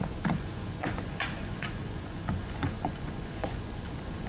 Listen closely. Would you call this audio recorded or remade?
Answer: remade